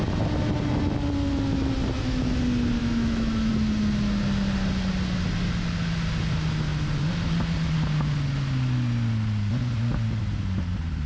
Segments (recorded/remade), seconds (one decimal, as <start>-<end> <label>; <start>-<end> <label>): 0.0-2.8 recorded; 2.8-3.5 remade; 3.5-11.1 recorded